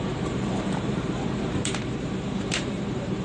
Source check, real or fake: fake